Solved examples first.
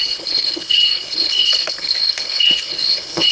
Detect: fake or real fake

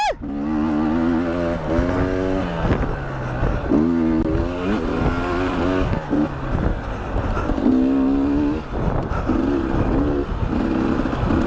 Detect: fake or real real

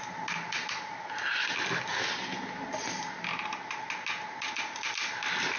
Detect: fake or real real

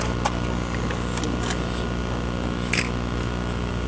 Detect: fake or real real